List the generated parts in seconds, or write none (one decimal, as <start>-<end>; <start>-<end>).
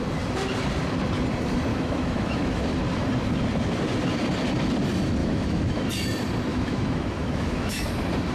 1.7-2.6; 5.2-5.9; 6.5-7.9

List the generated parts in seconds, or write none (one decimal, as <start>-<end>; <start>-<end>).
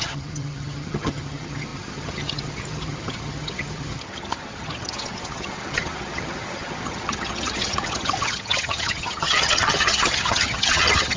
0.0-11.2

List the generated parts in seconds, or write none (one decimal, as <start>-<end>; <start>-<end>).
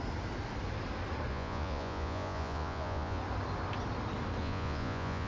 1.3-3.2; 4.4-5.3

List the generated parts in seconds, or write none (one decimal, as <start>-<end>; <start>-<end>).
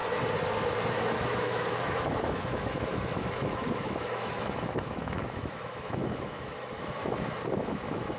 0.9-8.2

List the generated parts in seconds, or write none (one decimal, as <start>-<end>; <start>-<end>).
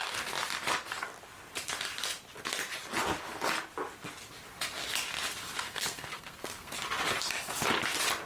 5.7-6.7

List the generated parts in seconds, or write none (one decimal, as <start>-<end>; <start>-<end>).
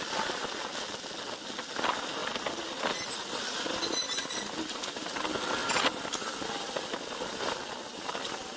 none